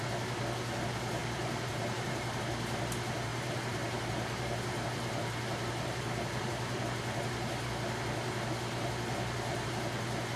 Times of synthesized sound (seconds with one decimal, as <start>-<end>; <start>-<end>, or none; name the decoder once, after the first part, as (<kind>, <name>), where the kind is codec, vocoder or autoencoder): 1.2-2.4 (vocoder, BigVGAN v2); 3.3-6.8

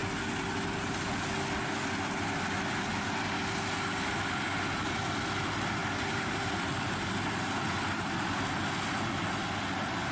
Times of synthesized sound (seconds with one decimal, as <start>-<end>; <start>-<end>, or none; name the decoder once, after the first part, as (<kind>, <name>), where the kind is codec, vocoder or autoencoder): 5.8-6.5 (vocoder, BigVGAN v2)

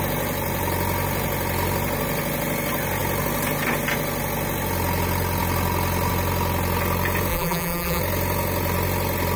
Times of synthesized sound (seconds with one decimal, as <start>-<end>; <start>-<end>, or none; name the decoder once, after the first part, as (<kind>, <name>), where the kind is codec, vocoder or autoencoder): 7.3-8.0 (vocoder, BigVGAN v2)

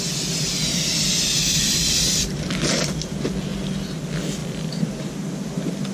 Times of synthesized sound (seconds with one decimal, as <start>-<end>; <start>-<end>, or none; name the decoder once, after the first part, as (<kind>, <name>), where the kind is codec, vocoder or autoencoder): 0.9-2.0 (vocoder, BigVGAN v2); 4.4-5.1

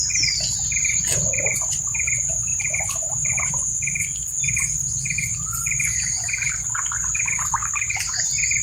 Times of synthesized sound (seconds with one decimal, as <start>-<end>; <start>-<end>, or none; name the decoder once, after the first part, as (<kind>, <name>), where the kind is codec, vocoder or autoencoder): 2.5-3.5 (vocoder, BigVGAN v2)

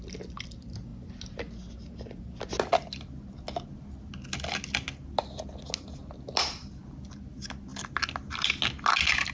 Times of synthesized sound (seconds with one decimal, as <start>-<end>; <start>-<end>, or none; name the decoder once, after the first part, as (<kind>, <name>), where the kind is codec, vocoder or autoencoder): none

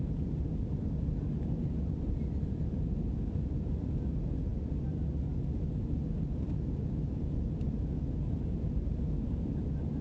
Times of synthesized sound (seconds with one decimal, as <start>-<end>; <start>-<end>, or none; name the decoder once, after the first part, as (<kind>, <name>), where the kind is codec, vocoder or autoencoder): 1.6-2.2 (vocoder, BigVGAN v2); 4.5-5.8

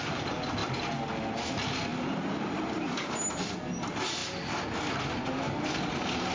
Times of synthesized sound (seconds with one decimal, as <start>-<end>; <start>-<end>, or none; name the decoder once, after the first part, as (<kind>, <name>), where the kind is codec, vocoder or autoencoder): 1.9-3.1 (vocoder, BigVGAN v2)